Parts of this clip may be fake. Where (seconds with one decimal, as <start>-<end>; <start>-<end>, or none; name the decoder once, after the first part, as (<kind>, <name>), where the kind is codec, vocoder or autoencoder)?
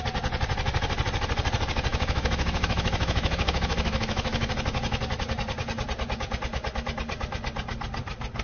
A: 1.9-4.5 (autoencoder, DAC-VAE)